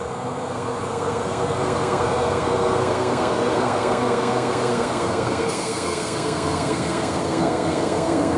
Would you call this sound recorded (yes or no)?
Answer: no